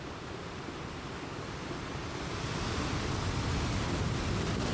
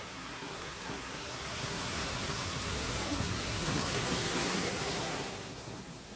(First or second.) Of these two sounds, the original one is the first